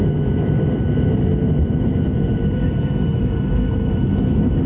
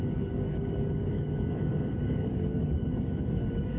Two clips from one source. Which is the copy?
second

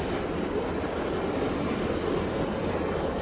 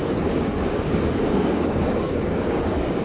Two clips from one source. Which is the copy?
second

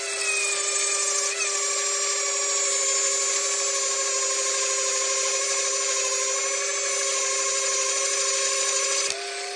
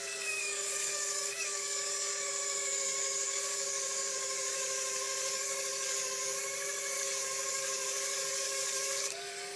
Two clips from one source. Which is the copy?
second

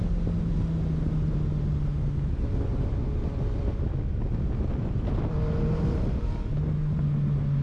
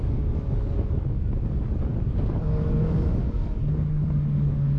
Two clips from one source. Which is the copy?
second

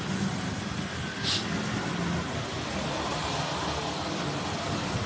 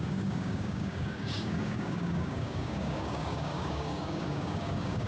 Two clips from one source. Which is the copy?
second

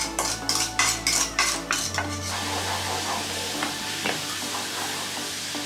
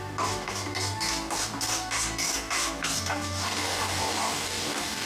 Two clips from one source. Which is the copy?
second